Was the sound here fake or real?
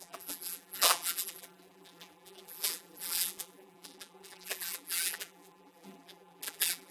fake